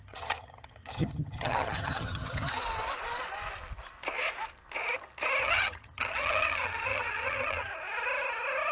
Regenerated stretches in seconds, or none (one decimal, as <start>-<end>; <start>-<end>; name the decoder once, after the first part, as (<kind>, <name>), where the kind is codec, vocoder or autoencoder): 0.0-2.6 (vocoder, HiFi-GAN); 5.4-7.7